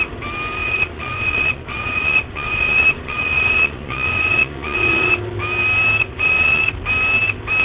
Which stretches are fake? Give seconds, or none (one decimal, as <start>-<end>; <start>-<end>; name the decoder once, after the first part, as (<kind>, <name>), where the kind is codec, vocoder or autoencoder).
0.6-5.1 (vocoder, Vocos); 6.0-6.6